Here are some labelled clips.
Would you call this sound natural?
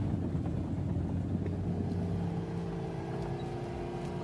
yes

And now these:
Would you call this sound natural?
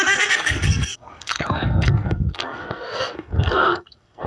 no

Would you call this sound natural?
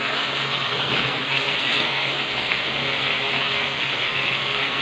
no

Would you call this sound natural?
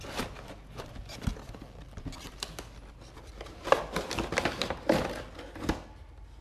yes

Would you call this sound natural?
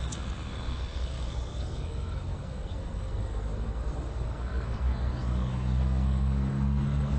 no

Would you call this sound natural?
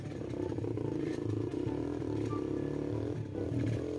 yes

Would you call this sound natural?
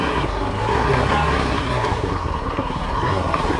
no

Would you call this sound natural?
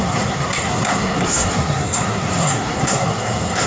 no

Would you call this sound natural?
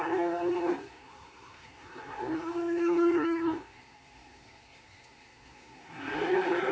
no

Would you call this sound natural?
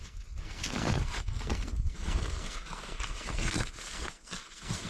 no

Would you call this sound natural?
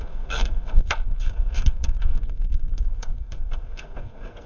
no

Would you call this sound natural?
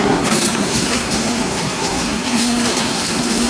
no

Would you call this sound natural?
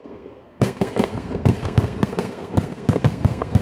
no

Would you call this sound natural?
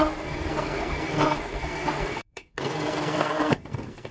no